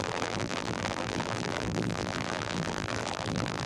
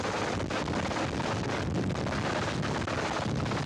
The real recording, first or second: second